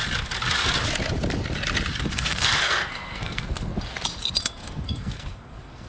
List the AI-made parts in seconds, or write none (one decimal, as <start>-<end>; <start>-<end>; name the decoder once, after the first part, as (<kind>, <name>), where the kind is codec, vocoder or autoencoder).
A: 2.1-3.7 (codec, SNAC); 4.4-5.9